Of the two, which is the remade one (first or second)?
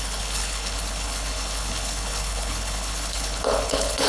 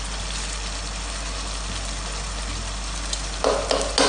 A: first